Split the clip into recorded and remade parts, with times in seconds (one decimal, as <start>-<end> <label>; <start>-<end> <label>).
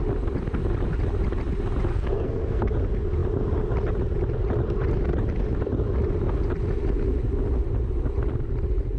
0.0-1.9 recorded; 1.9-2.7 remade; 2.7-9.0 recorded